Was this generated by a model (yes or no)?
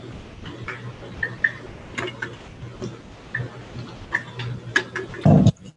no